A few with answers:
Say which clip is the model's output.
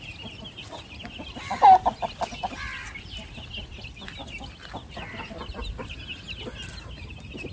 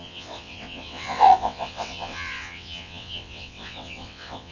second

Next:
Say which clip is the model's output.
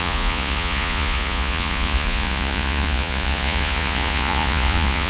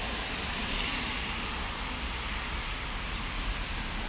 first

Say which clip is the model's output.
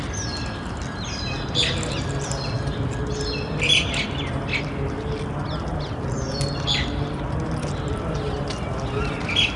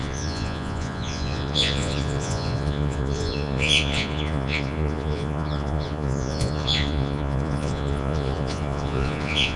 second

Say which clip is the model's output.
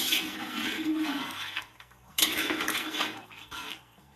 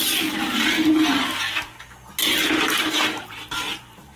first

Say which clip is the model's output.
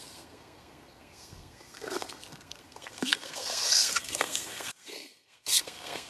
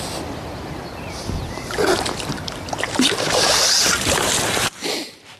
first